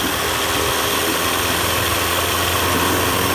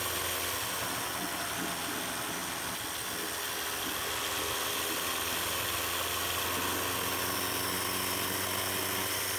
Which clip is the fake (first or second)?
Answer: first